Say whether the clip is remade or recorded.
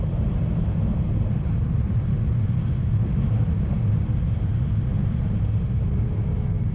recorded